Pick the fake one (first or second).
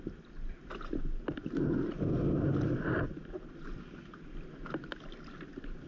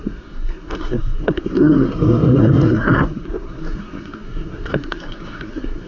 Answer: second